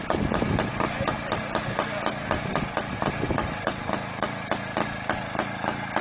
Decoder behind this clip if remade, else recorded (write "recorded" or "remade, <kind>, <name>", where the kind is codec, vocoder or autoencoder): recorded